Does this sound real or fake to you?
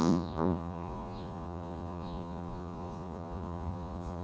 fake